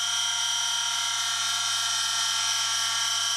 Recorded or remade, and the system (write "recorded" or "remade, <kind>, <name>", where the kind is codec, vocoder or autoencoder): recorded